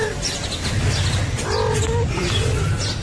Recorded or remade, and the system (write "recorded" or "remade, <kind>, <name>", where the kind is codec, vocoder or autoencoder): recorded